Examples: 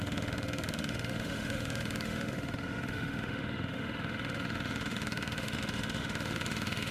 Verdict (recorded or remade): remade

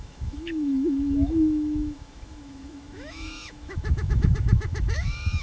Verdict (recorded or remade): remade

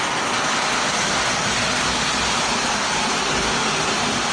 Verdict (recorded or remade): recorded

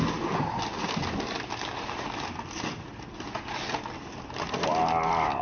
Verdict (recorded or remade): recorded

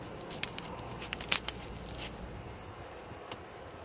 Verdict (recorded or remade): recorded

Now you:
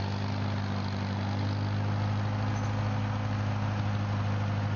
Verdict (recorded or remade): recorded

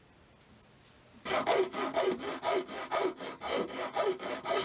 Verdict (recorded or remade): recorded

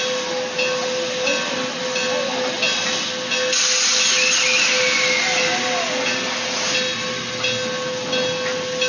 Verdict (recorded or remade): recorded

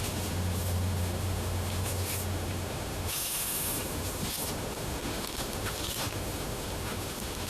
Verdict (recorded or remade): remade